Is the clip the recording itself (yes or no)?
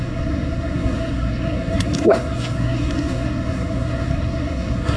no